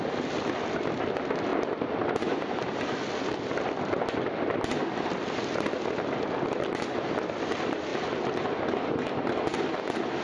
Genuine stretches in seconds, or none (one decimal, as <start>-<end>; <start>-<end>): 0.0-10.2